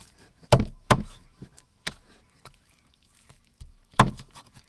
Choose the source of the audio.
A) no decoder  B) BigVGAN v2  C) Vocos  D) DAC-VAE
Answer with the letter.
D